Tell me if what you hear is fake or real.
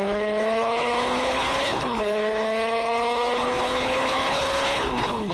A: fake